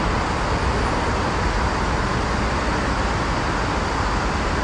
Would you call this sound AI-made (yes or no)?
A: no